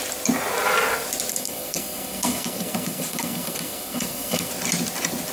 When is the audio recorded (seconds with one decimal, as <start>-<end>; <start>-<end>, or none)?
0.0-1.3; 4.5-5.3